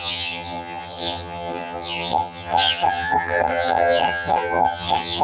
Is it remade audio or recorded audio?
remade